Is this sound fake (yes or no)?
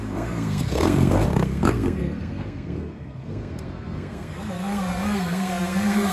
yes